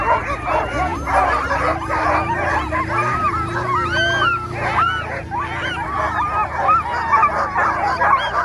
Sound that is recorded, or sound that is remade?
recorded